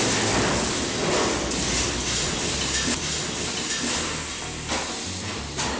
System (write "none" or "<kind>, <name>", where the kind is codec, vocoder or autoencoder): none